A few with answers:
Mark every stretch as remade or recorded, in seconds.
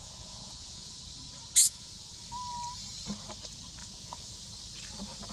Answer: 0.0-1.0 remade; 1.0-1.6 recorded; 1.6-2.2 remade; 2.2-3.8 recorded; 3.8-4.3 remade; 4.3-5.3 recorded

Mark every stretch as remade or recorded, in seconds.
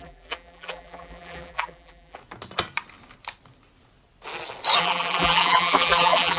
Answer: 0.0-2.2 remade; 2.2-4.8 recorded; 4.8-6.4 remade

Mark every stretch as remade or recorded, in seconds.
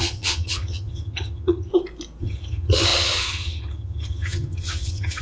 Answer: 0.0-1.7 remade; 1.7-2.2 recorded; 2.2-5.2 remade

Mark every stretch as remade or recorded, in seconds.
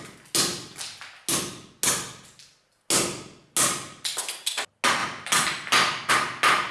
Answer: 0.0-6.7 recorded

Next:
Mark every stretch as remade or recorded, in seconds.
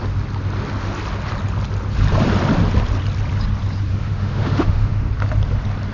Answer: 0.0-4.0 recorded; 4.0-5.1 remade; 5.1-5.9 recorded